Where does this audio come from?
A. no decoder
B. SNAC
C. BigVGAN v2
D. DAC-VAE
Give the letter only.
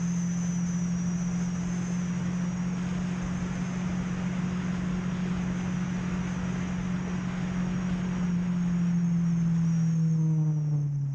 A